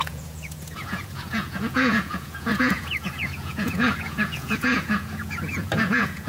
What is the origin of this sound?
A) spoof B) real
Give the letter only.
A